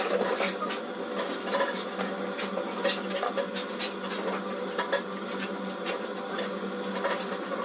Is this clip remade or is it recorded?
recorded